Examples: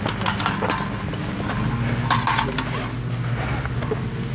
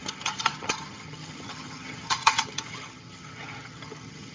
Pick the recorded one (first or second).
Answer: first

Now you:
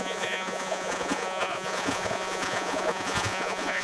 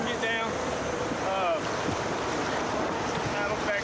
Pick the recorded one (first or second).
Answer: second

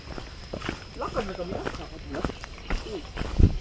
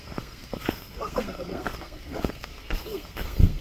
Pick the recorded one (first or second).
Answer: first